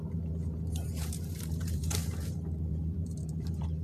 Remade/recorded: remade